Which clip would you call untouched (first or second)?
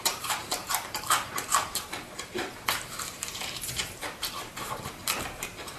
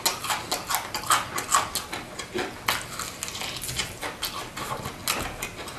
second